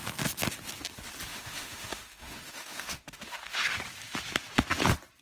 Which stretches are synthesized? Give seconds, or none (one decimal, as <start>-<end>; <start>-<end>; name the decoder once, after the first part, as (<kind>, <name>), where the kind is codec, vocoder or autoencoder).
1.3-3.8 (autoencoder, DAC-VAE)